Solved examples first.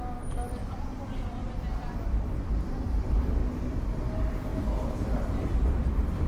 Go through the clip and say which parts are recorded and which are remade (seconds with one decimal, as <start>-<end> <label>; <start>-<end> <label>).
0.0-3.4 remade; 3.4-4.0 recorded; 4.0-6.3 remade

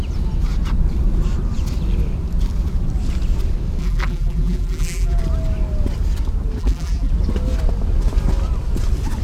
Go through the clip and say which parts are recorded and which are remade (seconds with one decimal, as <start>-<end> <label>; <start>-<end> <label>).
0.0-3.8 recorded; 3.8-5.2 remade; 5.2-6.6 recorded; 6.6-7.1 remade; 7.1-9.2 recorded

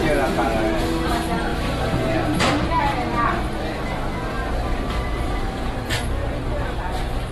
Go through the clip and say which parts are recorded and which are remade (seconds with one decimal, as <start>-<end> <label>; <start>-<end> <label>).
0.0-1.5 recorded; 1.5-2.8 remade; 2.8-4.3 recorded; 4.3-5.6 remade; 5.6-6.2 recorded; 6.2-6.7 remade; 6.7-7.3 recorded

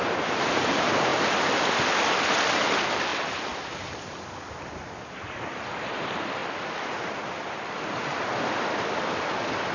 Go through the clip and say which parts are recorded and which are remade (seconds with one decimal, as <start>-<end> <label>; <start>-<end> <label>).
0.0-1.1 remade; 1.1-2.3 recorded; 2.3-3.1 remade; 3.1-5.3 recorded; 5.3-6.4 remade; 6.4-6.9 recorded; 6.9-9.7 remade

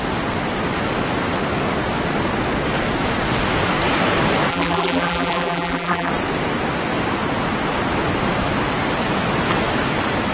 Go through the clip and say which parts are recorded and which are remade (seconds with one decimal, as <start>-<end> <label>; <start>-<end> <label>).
0.0-4.5 recorded; 4.5-6.1 remade; 6.1-10.3 recorded

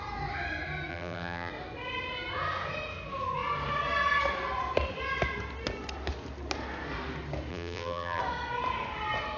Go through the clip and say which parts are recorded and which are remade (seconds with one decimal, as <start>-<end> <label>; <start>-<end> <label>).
0.0-0.9 recorded; 0.9-1.5 remade; 1.5-7.5 recorded; 7.5-8.2 remade; 8.2-9.4 recorded

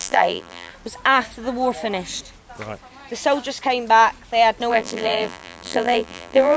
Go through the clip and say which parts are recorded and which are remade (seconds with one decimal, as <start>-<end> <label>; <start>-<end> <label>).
0.0-0.7 remade; 0.7-4.7 recorded; 4.7-6.6 remade

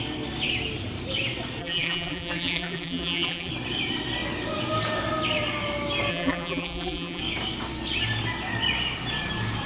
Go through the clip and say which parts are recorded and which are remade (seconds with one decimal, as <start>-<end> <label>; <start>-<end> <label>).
0.0-1.6 recorded; 1.6-3.5 remade; 3.5-6.1 recorded; 6.1-7.2 remade; 7.2-9.7 recorded